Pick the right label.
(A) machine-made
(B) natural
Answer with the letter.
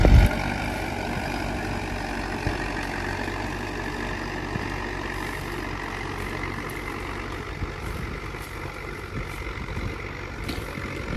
B